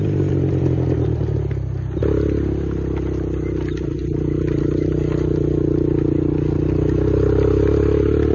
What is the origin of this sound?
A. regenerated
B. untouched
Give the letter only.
B